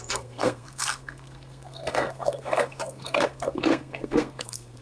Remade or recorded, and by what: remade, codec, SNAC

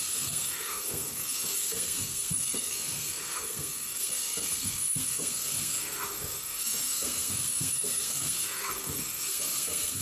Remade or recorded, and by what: remade, codec, SNAC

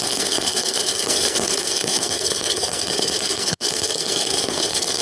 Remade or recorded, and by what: remade, codec, SNAC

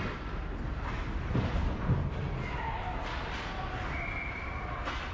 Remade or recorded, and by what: recorded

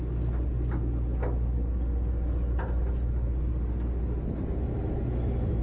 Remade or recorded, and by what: recorded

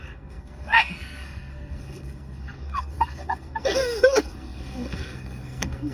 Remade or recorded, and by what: remade, codec, SNAC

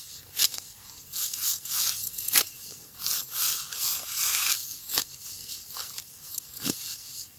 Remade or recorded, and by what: remade, codec, SNAC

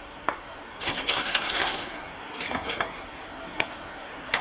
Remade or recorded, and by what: remade, codec, SNAC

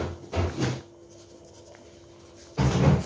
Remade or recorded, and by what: recorded